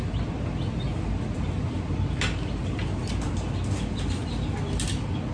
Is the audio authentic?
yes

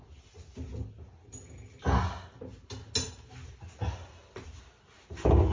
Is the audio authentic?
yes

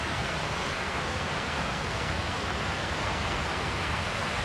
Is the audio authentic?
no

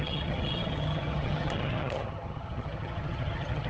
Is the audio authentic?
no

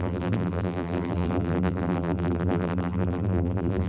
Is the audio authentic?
no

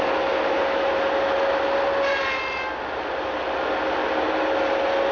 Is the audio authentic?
yes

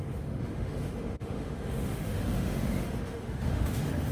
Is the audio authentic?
no